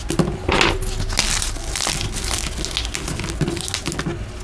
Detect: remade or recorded recorded